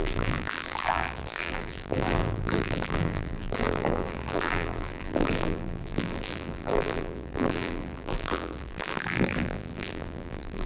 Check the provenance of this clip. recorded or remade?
remade